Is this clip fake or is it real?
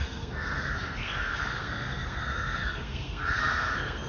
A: fake